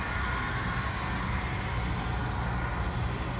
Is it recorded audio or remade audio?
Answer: recorded